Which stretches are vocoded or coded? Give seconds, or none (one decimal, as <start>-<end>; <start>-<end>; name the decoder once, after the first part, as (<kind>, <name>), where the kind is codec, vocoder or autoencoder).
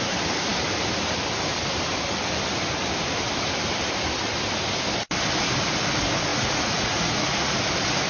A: 6.3-7.5 (vocoder, Vocos)